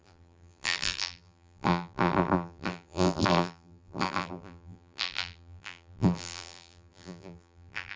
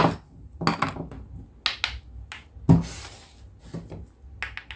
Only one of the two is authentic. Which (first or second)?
second